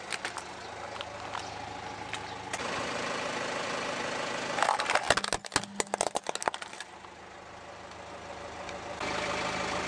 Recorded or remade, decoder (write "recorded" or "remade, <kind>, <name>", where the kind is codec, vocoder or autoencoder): recorded